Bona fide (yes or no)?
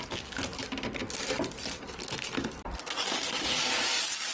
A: yes